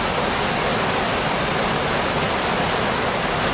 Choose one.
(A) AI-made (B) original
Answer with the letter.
B